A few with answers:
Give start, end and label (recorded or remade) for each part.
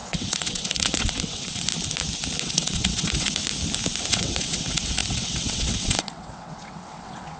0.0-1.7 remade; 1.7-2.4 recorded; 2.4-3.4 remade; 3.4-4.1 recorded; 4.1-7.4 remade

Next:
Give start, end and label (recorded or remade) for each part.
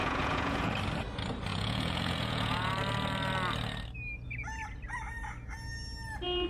0.0-0.7 remade; 0.7-1.5 recorded; 1.5-2.7 remade; 2.7-6.5 recorded